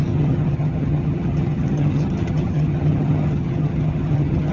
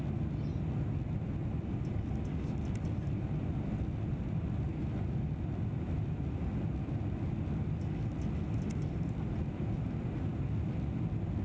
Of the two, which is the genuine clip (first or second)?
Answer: second